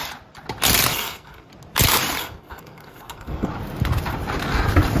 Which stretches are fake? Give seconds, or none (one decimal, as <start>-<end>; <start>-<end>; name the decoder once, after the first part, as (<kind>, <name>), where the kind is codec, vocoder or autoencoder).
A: 0.9-1.5 (codec, SNAC); 2.2-3.5